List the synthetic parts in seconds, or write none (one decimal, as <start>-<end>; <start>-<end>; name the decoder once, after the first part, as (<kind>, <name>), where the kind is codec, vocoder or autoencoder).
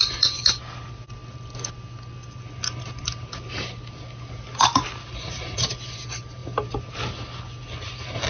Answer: none